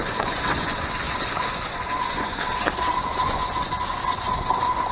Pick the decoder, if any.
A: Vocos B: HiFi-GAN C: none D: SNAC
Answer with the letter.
A